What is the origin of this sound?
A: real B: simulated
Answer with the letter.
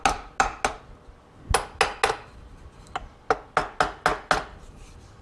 A